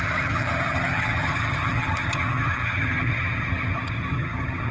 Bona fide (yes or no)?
no